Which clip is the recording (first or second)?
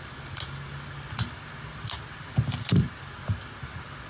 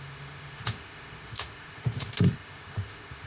first